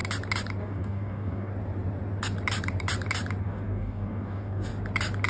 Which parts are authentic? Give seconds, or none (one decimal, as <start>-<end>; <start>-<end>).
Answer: 0.0-0.6; 1.5-3.4; 4.7-5.3